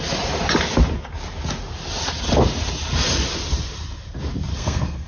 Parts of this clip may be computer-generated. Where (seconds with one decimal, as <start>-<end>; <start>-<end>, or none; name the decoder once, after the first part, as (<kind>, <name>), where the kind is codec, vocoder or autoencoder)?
4.5-5.1 (codec, SNAC)